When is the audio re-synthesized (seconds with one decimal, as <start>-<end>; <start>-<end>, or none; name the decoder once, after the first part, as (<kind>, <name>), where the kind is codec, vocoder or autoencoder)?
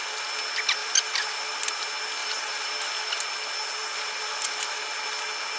0.8-1.8 (vocoder, BigVGAN v2); 2.2-3.2; 3.8-4.8